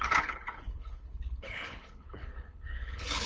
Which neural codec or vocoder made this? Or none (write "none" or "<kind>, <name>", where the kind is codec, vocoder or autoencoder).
codec, HILCodec